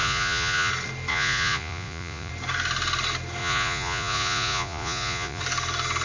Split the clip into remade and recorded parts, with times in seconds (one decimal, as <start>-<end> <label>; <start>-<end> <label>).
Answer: 0.0-0.7 remade; 0.7-1.1 recorded; 1.1-2.3 remade; 2.3-3.4 recorded; 3.4-5.4 remade; 5.4-6.0 recorded